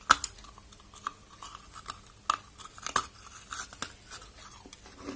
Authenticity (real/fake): real